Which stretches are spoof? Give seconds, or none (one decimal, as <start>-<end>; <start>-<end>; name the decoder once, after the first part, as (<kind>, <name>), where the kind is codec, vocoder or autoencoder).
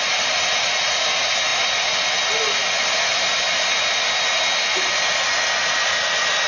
none